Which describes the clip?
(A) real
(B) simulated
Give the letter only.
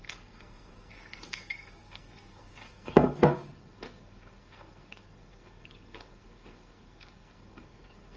B